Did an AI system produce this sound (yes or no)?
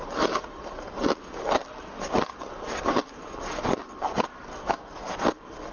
no